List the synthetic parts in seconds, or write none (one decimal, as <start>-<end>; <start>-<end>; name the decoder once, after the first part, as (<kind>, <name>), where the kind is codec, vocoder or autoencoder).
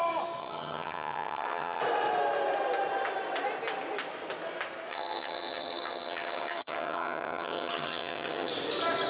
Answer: 0.4-1.8 (vocoder, HiFi-GAN); 4.9-8.5